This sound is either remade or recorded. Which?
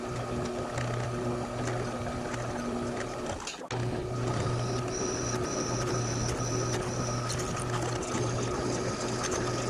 recorded